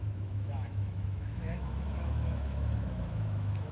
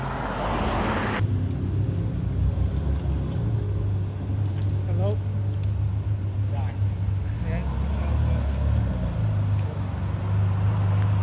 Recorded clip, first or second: second